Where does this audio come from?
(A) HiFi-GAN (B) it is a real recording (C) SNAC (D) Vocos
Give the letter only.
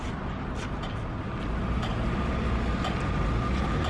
B